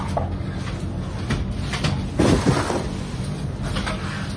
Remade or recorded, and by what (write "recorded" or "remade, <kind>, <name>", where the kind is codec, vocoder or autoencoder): recorded